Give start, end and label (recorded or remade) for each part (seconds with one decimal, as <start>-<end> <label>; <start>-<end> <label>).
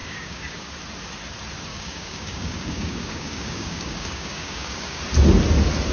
0.0-0.7 remade; 0.7-1.7 recorded; 1.7-5.0 remade; 5.0-5.9 recorded